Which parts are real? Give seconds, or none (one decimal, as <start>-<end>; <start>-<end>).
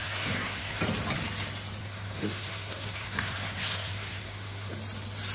0.8-1.8; 4.7-5.3